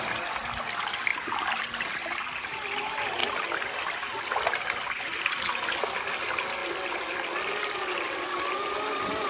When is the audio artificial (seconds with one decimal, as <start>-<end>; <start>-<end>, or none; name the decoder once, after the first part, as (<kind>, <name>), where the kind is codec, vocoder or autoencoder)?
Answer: none